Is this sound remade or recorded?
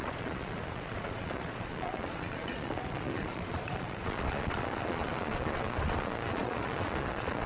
remade